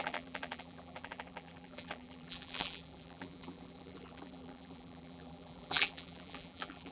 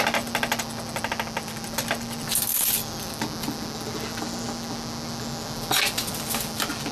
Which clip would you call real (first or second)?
second